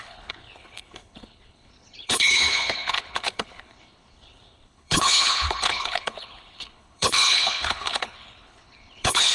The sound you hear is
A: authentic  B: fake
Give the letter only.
B